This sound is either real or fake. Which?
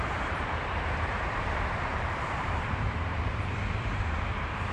fake